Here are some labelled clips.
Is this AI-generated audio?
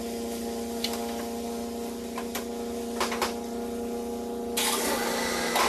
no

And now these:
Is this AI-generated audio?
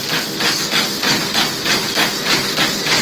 no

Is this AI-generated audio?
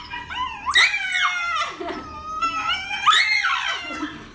no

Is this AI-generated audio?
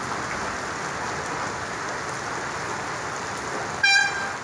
no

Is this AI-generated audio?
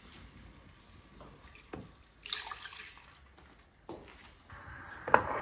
no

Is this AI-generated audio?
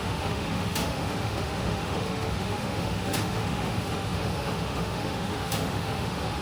yes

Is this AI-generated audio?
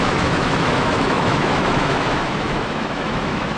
yes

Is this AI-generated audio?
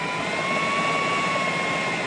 no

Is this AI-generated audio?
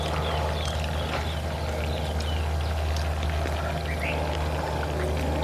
no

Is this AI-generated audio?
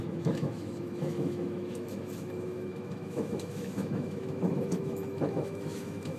yes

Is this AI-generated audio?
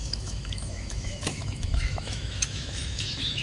yes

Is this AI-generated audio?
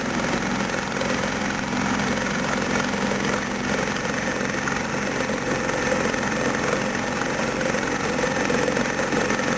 no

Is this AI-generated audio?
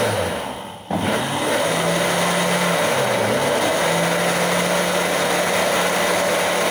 no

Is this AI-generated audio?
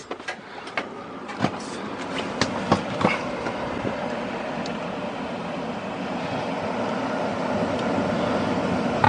no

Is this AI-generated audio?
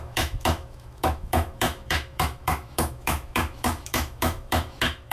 yes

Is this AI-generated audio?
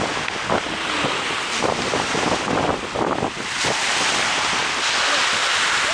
no